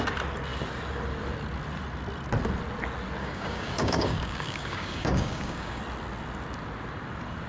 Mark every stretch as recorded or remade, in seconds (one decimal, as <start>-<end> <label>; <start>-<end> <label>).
0.0-3.2 recorded; 3.2-5.8 remade; 5.8-7.5 recorded